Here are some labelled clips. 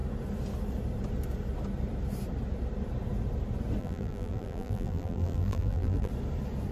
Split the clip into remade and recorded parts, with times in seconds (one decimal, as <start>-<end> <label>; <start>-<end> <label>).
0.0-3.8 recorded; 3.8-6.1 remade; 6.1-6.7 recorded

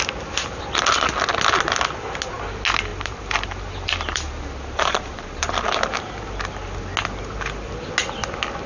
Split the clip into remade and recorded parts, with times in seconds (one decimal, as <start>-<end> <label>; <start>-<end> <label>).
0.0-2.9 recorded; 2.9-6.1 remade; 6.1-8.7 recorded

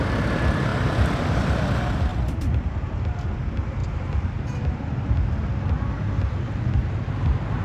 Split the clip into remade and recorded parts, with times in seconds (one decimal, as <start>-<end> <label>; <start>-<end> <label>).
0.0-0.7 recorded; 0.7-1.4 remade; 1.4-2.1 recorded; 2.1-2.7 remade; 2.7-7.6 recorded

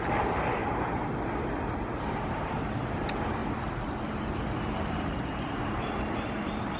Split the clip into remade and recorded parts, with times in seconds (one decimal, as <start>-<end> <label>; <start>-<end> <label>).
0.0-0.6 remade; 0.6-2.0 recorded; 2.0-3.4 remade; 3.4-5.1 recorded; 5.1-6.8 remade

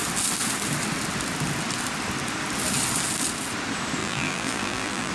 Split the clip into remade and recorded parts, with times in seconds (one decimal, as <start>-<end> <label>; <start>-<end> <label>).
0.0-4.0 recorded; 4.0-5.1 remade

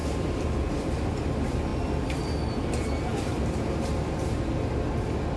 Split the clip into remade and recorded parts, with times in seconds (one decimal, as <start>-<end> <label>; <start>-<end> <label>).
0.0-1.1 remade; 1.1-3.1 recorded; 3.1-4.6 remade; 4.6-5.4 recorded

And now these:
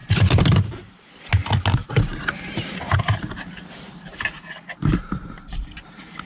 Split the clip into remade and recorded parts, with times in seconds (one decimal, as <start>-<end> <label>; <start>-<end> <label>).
0.0-1.1 remade; 1.1-1.8 recorded; 1.8-5.1 remade; 5.1-6.3 recorded

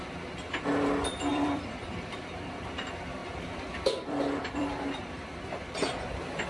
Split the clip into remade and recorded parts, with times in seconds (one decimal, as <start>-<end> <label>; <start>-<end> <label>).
0.0-1.3 recorded; 1.3-2.3 remade; 2.3-3.2 recorded; 3.2-6.5 remade